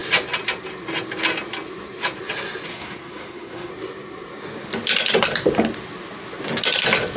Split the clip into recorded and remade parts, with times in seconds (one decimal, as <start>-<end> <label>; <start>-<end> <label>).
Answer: 0.0-2.7 recorded; 2.7-3.7 remade; 3.7-7.2 recorded